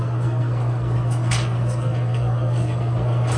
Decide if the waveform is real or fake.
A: fake